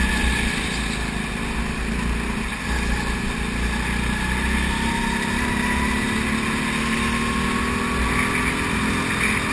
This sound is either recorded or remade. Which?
recorded